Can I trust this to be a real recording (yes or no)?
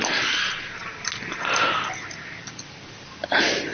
yes